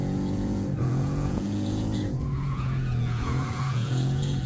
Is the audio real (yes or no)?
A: no